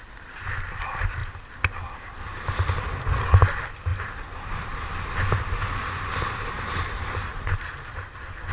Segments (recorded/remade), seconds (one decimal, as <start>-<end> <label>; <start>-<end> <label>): 0.0-8.5 recorded